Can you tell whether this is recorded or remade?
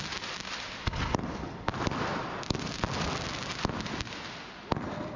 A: recorded